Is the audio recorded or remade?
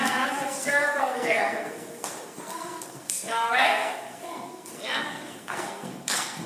remade